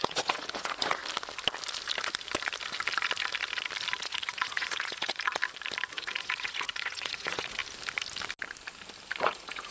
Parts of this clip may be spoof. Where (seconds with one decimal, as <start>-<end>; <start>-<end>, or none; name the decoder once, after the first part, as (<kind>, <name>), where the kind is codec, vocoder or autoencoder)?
0.0-1.0 (vocoder, Vocos); 4.0-5.4; 5.9-7.6; 9.2-9.7